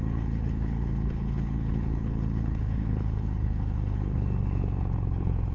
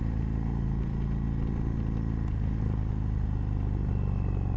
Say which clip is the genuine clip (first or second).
second